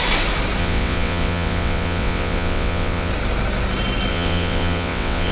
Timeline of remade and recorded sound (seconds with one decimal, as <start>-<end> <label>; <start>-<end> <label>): 0.0-0.6 recorded; 0.6-3.1 remade; 3.1-4.1 recorded; 4.1-5.3 remade